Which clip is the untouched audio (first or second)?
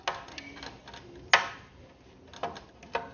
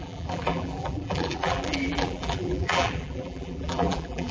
first